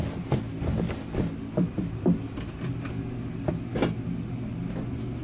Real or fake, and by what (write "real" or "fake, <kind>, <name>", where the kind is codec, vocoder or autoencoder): real